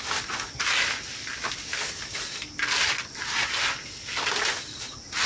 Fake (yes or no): no